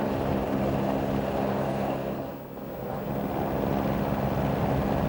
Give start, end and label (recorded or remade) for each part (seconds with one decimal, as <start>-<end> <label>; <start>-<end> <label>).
0.0-1.5 recorded; 1.5-3.1 remade; 3.1-5.1 recorded